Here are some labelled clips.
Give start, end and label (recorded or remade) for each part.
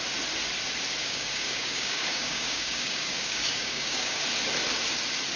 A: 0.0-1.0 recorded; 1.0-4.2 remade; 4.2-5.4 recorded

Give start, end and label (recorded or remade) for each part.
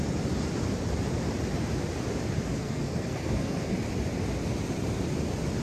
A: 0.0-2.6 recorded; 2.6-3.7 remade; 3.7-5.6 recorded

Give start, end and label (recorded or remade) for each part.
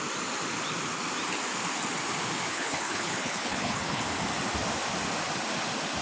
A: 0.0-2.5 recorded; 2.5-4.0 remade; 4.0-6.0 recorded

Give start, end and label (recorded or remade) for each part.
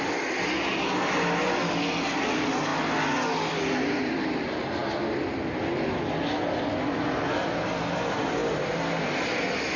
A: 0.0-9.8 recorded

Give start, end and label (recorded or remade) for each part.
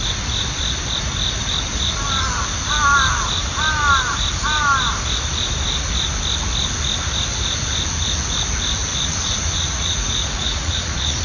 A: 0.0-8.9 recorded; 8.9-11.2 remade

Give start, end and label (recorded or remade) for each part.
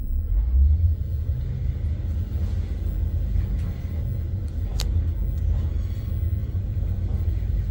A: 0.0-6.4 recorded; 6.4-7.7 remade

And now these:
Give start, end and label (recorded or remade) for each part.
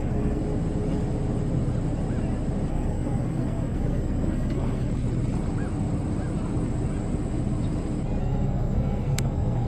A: 0.0-0.4 remade; 0.4-2.7 recorded; 2.7-4.9 remade; 4.9-8.2 recorded; 8.2-9.7 remade